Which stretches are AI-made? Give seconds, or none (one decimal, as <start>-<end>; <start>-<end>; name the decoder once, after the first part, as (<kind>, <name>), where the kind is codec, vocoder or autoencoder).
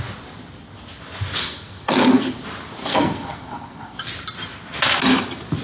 1.4-2.3 (codec, SNAC); 2.8-4.0